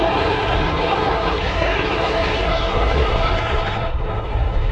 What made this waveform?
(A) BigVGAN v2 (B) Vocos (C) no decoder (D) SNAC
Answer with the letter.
D